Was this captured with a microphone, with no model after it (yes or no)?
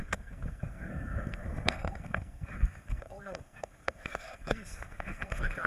no